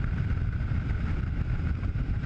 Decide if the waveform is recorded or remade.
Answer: remade